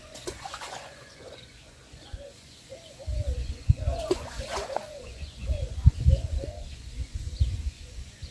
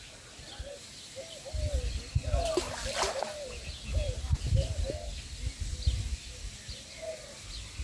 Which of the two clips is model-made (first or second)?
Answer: first